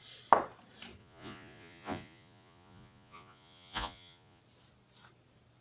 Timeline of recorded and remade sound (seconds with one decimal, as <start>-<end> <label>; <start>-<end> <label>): 0.0-1.0 recorded; 1.0-4.4 remade; 4.4-5.6 recorded